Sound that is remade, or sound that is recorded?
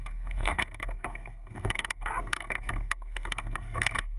remade